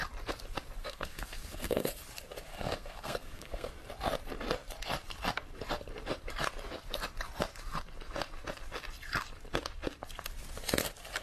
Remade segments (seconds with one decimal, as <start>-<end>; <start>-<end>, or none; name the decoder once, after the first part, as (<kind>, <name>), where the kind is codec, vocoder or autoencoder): 0.8-1.9 (codec, SNAC); 2.5-3.7